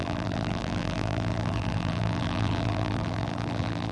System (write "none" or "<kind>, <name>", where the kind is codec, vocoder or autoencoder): vocoder, BigVGAN v2